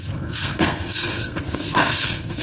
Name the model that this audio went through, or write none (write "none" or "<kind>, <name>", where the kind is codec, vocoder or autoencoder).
codec, SNAC